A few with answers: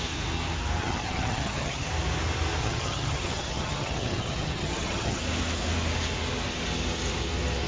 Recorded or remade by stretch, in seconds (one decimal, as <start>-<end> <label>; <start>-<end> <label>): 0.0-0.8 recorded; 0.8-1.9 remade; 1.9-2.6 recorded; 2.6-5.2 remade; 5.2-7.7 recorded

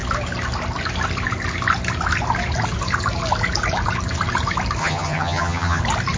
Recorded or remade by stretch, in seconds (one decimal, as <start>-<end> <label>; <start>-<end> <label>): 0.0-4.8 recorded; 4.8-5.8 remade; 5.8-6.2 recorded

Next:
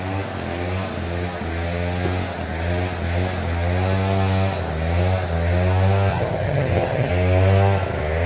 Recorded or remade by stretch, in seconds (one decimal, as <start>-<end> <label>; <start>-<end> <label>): 0.0-6.1 recorded; 6.1-7.1 remade; 7.1-8.3 recorded

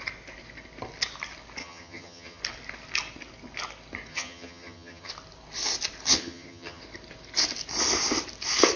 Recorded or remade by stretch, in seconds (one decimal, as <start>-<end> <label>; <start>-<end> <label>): 0.0-1.6 recorded; 1.6-2.4 remade; 2.4-4.1 recorded; 4.1-5.1 remade; 5.1-6.1 recorded; 6.1-6.8 remade; 6.8-8.8 recorded

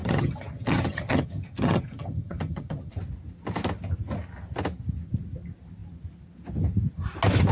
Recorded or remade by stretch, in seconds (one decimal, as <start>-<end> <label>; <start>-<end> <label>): 0.0-2.9 remade; 2.9-7.5 recorded

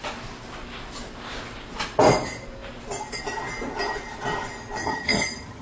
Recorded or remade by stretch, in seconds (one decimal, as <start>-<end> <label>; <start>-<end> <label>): 0.0-4.8 recorded; 4.8-5.6 remade

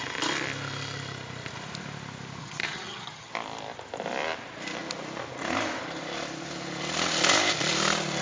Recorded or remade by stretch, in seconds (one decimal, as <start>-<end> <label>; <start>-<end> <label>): 0.0-2.4 recorded; 2.4-3.3 remade; 3.3-8.2 recorded